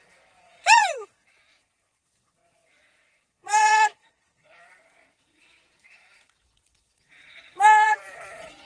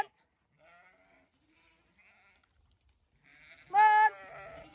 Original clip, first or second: second